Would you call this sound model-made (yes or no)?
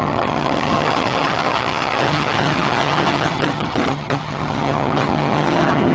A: yes